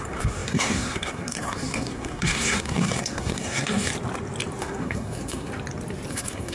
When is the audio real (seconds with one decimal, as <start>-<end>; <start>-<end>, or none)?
3.9-4.6; 5.5-6.1